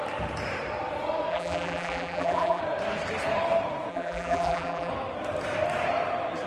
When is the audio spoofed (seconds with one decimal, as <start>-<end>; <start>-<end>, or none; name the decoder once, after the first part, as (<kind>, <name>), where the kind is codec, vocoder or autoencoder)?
1.3-2.6 (vocoder, BigVGAN v2); 3.9-4.9